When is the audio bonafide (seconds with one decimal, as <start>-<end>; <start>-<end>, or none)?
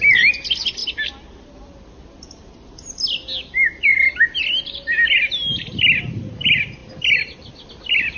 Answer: 0.0-8.2